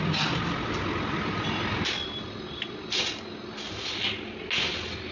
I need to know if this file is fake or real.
real